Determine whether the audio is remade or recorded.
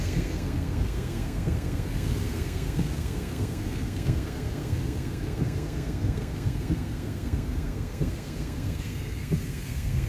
remade